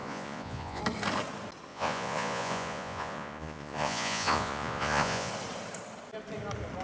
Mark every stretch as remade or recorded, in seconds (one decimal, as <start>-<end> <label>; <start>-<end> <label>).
0.0-0.8 remade; 0.8-1.7 recorded; 1.7-5.3 remade; 5.3-6.8 recorded